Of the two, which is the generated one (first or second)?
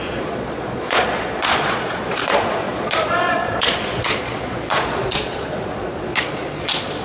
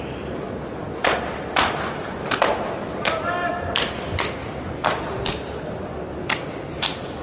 first